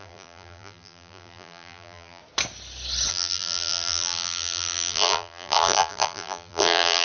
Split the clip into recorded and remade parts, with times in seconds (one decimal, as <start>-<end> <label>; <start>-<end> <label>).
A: 0.0-2.2 remade; 2.2-3.1 recorded; 3.1-7.0 remade